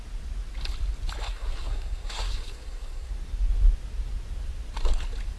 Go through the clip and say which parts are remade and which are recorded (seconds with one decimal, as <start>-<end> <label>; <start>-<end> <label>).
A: 0.0-1.2 recorded; 1.2-3.1 remade; 3.1-5.4 recorded